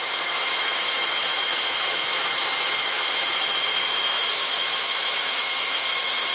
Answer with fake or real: fake